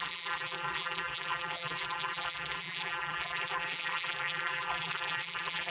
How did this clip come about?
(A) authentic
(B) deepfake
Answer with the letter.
B